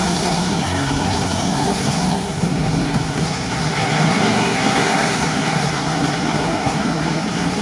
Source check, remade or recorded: remade